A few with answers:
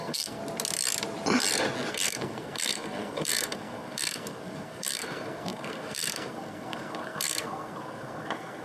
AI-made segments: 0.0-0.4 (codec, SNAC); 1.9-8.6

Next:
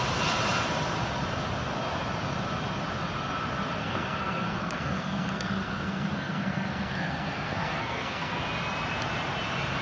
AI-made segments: 3.8-8.4 (codec, SNAC)

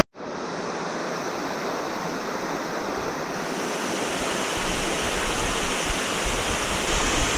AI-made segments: none

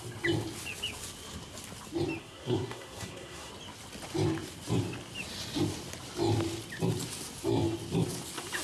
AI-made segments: 2.2-3.5 (codec, SNAC)

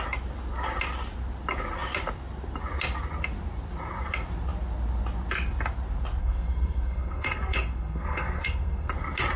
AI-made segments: 6.2-8.9 (codec, SNAC)